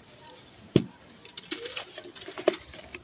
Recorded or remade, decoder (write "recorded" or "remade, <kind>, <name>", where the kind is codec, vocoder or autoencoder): recorded